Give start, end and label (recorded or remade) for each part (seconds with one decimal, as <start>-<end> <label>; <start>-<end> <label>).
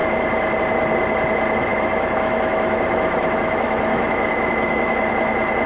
0.0-1.7 recorded; 1.7-5.1 remade; 5.1-5.7 recorded